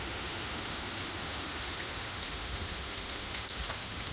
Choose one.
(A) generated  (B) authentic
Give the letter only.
A